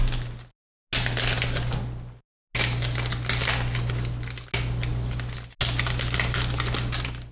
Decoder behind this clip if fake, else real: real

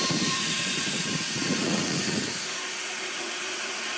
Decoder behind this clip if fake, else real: fake, vocoder, Vocos